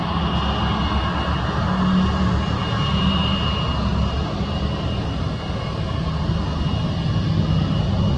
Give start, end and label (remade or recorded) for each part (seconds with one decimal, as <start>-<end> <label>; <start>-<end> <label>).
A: 0.0-3.9 recorded; 3.9-5.2 remade; 5.2-8.2 recorded